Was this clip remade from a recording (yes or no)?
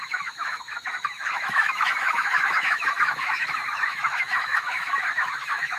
yes